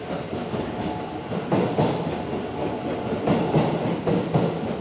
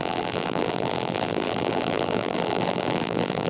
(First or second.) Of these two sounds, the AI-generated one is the second